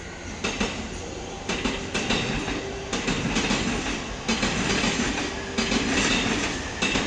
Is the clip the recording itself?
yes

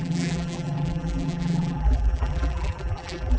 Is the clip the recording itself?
no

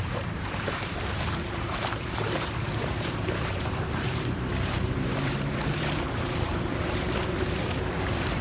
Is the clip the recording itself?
no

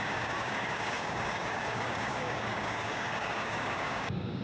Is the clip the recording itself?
no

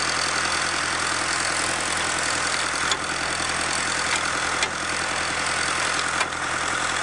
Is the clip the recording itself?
yes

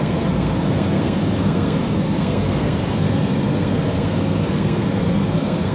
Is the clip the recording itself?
no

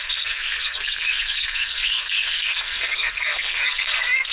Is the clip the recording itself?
no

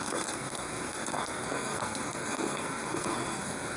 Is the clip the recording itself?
no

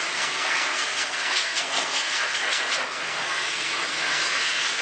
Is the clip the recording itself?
no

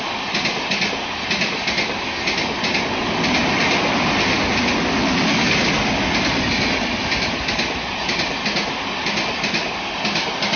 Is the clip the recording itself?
yes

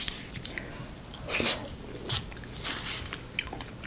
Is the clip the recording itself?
yes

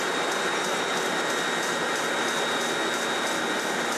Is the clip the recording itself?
yes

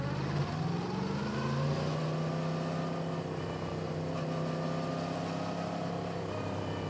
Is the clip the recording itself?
yes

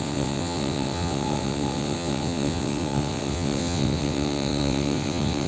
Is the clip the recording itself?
no